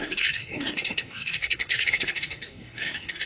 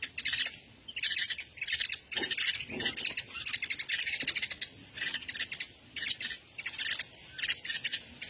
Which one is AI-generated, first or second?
first